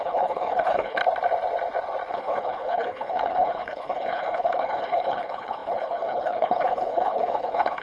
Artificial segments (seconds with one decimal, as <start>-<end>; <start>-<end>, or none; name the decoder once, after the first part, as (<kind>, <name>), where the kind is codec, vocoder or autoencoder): 0.0-1.0 (codec, HILCodec); 2.1-7.8

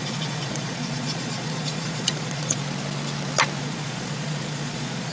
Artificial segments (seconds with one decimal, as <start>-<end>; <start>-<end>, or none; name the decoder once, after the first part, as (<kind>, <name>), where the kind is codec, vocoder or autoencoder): 0.0-2.6 (vocoder, Vocos); 3.6-5.1

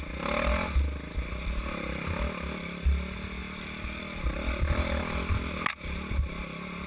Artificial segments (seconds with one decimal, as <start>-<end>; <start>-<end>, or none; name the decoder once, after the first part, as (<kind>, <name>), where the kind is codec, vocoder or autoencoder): 3.4-5.0 (vocoder, BigVGAN v2)